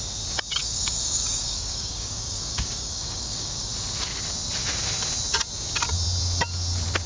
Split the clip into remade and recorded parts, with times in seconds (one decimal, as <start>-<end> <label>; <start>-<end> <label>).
0.0-0.6 recorded; 0.6-3.7 remade; 3.7-7.1 recorded